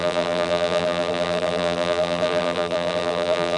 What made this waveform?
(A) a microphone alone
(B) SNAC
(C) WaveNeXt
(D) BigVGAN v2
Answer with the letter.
D